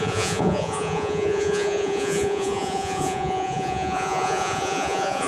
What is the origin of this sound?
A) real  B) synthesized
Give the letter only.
B